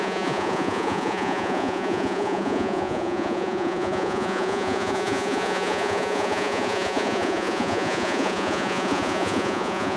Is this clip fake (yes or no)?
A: yes